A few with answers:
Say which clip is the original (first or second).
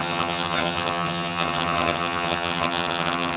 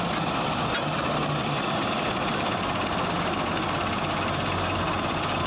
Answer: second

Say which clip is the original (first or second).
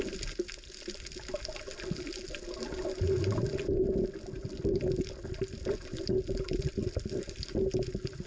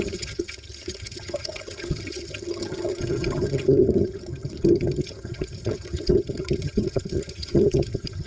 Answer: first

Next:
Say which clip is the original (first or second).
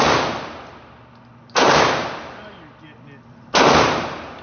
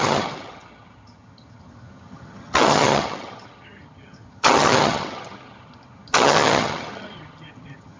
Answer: first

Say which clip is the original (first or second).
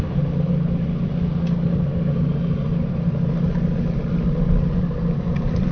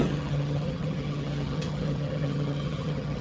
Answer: first